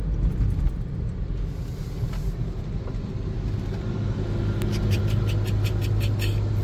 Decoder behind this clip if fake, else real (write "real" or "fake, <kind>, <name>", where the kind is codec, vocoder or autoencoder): real